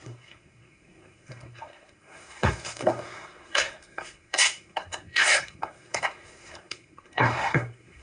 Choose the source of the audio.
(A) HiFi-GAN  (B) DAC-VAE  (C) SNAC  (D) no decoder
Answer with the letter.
C